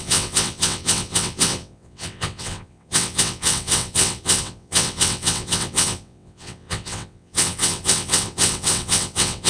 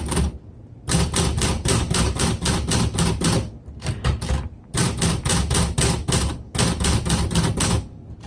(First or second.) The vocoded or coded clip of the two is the first